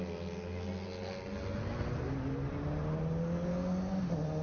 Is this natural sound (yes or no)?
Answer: yes